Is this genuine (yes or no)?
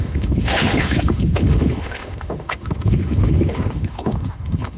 no